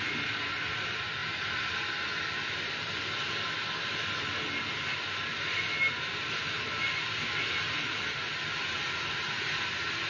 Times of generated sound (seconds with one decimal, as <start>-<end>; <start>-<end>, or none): none